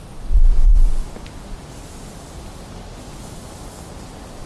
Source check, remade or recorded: recorded